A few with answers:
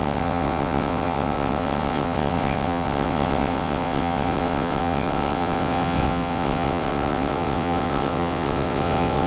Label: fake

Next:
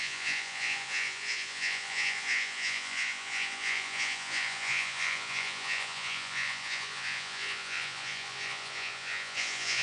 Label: fake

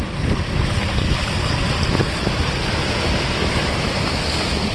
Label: real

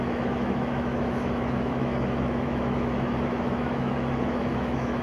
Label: fake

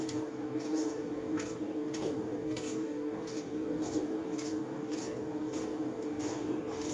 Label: fake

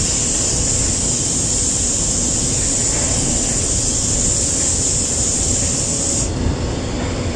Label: real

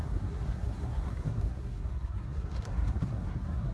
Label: fake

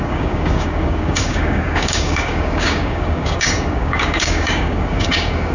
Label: fake